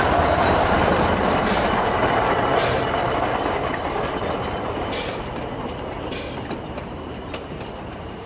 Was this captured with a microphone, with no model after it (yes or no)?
yes